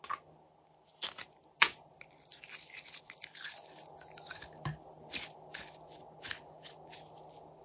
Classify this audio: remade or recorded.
recorded